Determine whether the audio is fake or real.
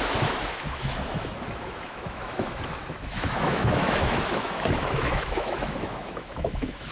fake